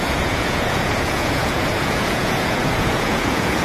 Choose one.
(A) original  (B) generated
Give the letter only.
B